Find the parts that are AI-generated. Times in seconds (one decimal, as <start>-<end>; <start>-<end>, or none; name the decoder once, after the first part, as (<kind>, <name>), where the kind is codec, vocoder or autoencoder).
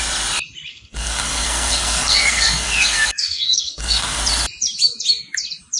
0.7-4.2 (codec, SNAC)